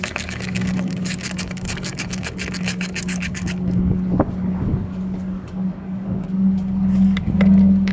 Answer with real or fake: fake